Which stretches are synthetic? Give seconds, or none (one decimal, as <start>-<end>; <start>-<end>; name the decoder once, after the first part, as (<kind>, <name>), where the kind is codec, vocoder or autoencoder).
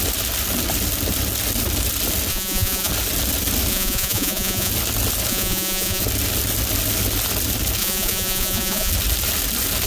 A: 2.3-2.9 (vocoder, Vocos); 3.7-4.7; 5.3-6.0; 7.8-8.9